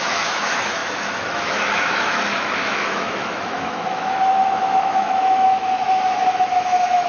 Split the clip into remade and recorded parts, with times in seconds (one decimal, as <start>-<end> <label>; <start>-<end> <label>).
0.0-7.1 remade

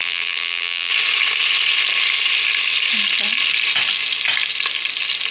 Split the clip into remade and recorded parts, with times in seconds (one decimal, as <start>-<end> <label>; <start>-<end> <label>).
0.0-0.9 remade; 0.9-5.3 recorded

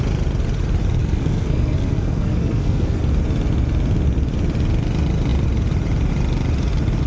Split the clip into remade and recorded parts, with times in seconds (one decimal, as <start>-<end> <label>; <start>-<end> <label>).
0.0-1.0 recorded; 1.0-3.0 remade; 3.0-7.1 recorded

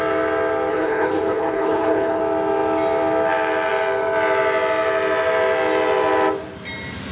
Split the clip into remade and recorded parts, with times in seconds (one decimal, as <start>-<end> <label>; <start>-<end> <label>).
0.0-0.7 recorded; 0.7-2.2 remade; 2.2-7.1 recorded